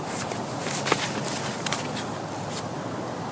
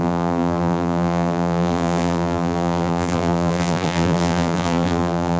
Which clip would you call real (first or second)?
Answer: first